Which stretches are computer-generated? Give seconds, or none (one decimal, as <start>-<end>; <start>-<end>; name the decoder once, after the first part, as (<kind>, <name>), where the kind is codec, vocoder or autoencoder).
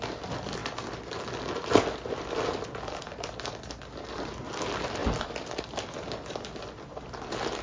5.0-5.6 (vocoder, BigVGAN v2)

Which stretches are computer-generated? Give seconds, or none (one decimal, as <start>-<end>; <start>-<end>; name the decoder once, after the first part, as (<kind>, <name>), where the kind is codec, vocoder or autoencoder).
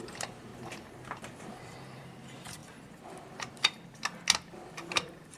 0.0-0.5 (vocoder, BigVGAN v2); 1.4-2.6; 4.9-5.4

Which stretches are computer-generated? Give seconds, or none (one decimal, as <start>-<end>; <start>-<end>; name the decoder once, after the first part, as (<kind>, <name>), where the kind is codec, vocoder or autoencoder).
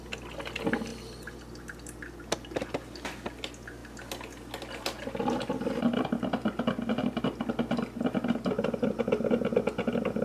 none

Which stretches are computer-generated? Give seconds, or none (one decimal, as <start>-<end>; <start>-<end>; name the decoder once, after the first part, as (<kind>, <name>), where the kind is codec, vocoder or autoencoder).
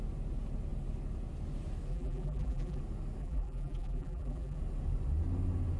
1.9-2.8 (vocoder, BigVGAN v2); 3.2-4.6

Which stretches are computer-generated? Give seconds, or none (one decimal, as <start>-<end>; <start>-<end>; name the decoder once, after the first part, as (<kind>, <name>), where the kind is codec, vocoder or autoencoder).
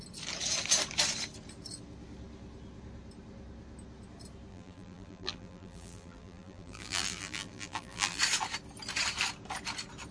4.5-8.2 (vocoder, BigVGAN v2)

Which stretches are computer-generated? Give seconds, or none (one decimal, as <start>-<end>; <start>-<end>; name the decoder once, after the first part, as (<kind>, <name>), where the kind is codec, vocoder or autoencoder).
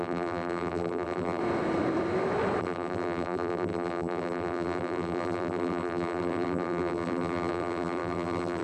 0.0-1.4 (vocoder, BigVGAN v2); 2.6-8.6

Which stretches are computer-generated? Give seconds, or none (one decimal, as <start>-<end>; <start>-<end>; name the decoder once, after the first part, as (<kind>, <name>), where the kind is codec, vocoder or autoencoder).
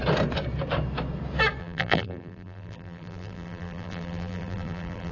1.6-5.1 (vocoder, BigVGAN v2)